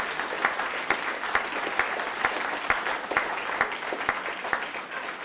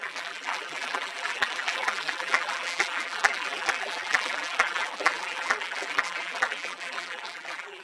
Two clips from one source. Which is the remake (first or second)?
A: second